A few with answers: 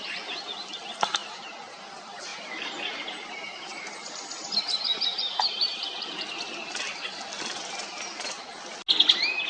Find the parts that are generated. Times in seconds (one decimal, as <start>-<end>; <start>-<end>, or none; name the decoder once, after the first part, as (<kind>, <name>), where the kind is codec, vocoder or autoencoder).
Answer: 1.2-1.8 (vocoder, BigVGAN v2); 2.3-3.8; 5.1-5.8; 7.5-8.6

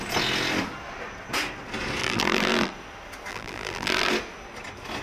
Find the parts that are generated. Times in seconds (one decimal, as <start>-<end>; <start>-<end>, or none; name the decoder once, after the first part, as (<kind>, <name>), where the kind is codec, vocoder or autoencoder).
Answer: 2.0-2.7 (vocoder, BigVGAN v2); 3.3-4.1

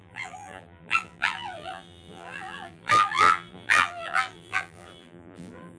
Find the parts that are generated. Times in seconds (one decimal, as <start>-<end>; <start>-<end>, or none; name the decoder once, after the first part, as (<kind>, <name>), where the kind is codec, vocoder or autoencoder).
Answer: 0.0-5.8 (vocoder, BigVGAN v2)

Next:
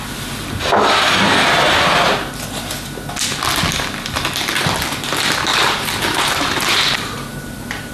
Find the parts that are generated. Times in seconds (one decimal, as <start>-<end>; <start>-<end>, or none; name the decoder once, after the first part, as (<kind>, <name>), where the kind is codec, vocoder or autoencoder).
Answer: 5.5-7.9 (vocoder, BigVGAN v2)

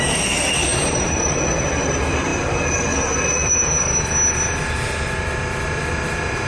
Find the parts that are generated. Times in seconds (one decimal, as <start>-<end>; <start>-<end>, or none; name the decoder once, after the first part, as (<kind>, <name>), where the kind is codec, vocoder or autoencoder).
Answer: 0.7-1.4 (vocoder, BigVGAN v2)

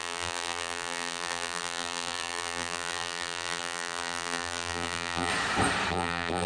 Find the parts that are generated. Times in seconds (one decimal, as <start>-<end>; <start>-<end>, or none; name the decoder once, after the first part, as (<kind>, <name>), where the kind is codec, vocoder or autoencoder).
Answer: 0.0-5.3 (vocoder, BigVGAN v2); 5.9-6.5

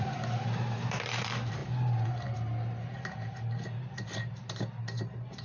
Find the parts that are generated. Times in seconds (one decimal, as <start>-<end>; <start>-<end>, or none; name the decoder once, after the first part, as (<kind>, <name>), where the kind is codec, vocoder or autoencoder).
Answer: 0.0-1.6 (vocoder, BigVGAN v2); 4.8-5.4